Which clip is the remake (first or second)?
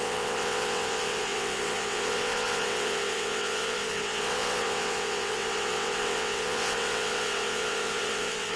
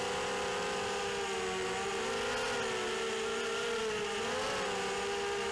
first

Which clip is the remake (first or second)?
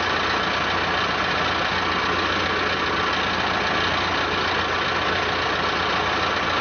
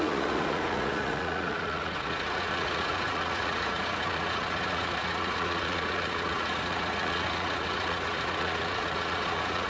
second